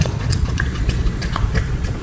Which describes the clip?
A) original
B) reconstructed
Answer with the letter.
B